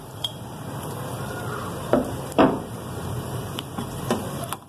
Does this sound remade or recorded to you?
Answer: remade